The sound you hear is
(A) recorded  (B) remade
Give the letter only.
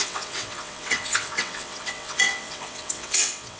B